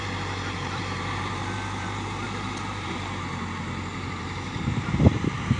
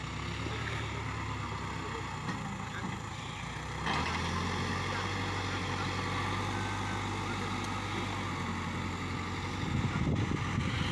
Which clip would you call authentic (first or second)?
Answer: second